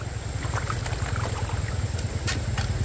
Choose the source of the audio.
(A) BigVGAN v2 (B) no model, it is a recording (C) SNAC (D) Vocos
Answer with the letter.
B